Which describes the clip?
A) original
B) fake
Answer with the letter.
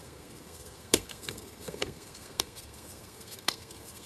B